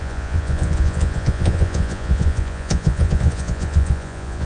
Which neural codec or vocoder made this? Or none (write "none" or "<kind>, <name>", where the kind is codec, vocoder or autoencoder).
vocoder, Vocos